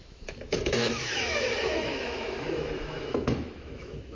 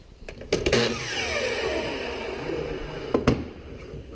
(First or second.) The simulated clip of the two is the first